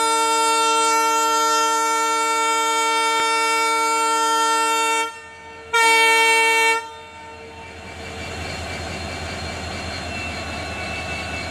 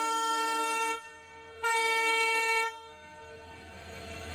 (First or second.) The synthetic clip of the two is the second